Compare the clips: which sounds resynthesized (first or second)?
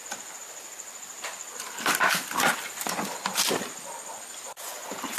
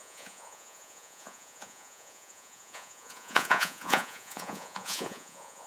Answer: second